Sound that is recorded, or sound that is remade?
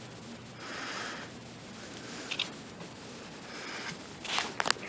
recorded